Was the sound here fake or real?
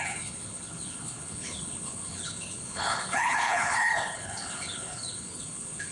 fake